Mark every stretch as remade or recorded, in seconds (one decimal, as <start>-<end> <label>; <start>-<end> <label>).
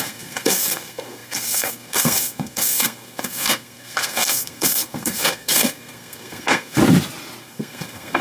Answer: 0.0-6.8 remade; 6.8-7.4 recorded; 7.4-8.2 remade